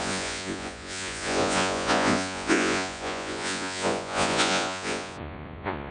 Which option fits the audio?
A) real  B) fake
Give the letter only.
B